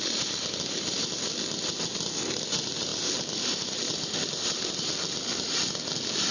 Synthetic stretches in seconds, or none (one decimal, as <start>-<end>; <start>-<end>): none